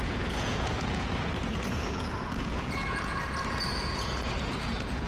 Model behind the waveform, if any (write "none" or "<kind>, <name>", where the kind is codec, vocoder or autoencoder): vocoder, Vocos